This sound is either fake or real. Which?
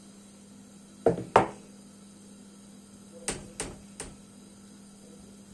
real